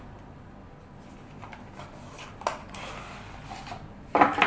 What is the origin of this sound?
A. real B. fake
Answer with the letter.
A